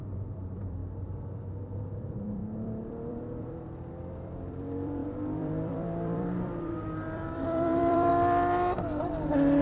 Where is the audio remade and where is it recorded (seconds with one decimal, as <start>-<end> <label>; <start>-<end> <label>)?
0.0-0.8 remade; 0.8-1.8 recorded; 1.8-8.1 remade; 8.1-9.0 recorded; 9.0-9.6 remade